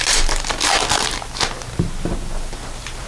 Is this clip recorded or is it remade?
recorded